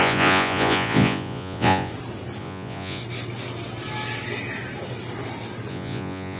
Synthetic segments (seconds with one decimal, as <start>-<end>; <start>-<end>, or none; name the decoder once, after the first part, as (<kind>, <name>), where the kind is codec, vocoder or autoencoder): 0.0-1.9 (vocoder, Vocos); 2.4-3.0; 5.7-6.4